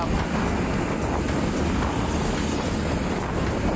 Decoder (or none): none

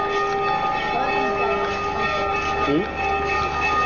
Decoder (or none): none